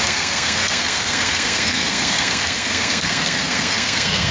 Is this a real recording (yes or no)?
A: no